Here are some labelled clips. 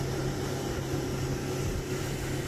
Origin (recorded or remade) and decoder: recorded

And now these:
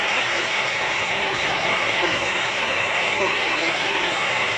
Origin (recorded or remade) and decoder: remade, codec, SNAC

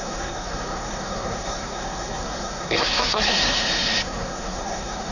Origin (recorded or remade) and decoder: remade, codec, SNAC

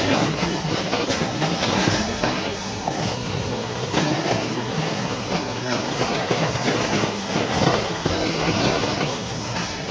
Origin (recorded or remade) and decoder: remade, codec, SNAC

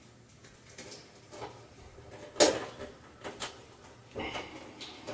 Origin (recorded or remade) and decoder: recorded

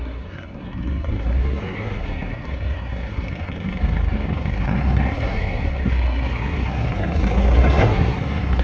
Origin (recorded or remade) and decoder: remade, codec, SNAC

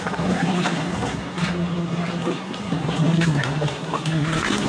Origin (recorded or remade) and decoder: remade, codec, SNAC